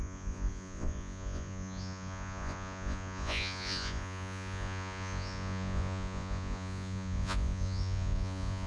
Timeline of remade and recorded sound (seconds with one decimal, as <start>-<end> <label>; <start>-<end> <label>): 0.0-8.7 remade

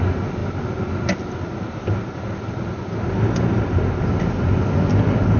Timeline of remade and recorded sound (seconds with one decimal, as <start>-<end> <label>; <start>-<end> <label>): 0.0-5.4 recorded